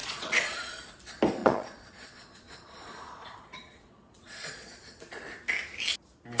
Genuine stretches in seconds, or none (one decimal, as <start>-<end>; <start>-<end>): 0.8-1.4; 5.2-6.4